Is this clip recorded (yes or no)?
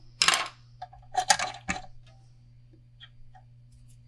yes